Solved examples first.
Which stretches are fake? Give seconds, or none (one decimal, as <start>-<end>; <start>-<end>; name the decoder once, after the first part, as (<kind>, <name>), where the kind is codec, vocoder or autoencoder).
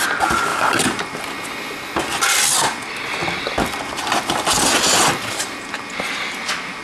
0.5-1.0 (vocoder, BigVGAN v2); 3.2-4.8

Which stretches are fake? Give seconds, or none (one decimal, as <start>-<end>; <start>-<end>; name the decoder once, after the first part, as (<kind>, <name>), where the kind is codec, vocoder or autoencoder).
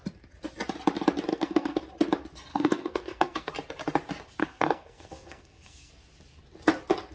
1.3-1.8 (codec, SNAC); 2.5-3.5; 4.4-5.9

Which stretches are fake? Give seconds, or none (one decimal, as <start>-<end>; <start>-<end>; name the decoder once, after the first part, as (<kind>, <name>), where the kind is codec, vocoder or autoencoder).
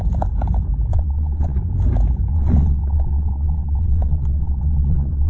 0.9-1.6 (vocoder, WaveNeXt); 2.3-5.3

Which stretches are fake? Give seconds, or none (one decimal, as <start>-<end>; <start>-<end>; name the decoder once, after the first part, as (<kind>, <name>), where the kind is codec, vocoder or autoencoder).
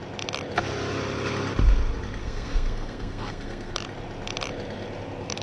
2.2-3.7 (codec, SNAC)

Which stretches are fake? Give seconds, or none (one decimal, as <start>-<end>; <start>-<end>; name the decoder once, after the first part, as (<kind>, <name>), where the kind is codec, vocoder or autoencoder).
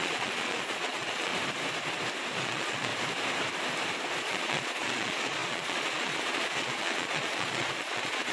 0.0-1.3 (vocoder, Vocos); 2.4-2.9; 4.2-8.3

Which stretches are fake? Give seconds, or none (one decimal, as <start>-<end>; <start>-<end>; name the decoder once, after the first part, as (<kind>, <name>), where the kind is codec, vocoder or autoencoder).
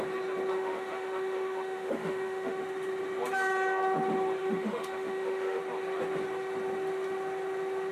0.5-2.6 (autoencoder, DAC-VAE); 4.4-5.6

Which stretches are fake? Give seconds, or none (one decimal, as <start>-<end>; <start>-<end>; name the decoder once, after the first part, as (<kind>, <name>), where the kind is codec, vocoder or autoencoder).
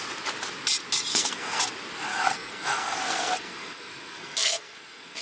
1.1-1.6 (codec, SNAC); 2.1-5.2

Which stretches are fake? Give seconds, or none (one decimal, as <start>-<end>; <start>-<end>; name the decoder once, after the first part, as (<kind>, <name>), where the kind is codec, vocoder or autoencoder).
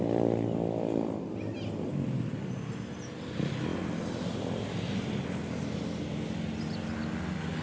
none